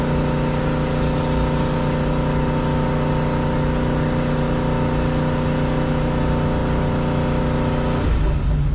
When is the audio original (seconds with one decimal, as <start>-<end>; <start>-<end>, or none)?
0.0-8.7